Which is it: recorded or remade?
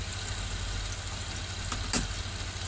recorded